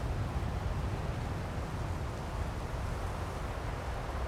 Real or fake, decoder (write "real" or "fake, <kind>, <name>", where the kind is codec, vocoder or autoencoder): real